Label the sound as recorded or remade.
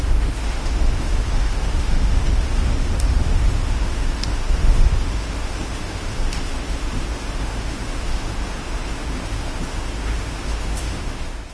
remade